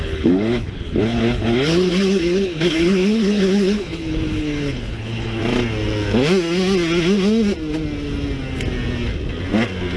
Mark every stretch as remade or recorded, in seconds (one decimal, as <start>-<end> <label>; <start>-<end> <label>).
0.0-5.4 remade; 5.4-10.0 recorded